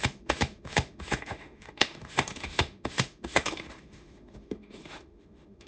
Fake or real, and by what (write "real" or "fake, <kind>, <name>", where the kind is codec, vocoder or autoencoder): fake, autoencoder, DAC-VAE